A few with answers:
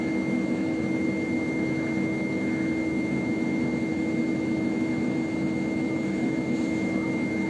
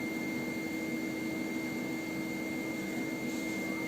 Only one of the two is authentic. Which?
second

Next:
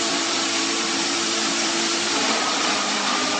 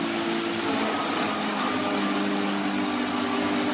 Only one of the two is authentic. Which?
second